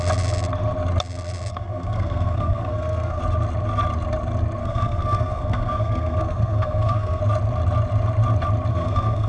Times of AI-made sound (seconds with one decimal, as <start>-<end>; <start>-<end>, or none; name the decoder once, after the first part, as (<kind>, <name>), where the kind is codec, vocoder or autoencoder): 1.5-3.2 (codec, SNAC); 4.6-7.2; 8.7-9.3